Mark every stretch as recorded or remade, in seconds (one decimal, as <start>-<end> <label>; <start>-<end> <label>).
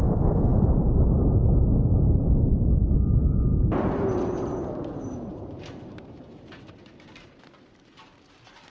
0.0-0.5 recorded; 0.5-1.2 remade; 1.2-1.9 recorded; 1.9-2.4 remade; 2.4-3.5 recorded; 3.5-7.3 remade; 7.3-8.7 recorded